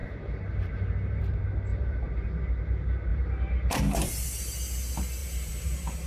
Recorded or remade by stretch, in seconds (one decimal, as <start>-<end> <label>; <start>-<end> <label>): 0.0-1.2 remade; 1.2-1.7 recorded; 1.7-2.4 remade; 2.4-3.1 recorded; 3.1-3.8 remade; 3.8-5.2 recorded; 5.2-6.1 remade